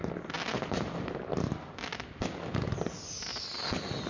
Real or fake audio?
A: real